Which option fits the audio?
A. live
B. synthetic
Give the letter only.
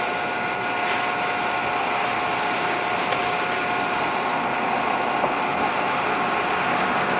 A